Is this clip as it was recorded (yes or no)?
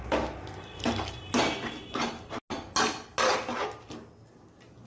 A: yes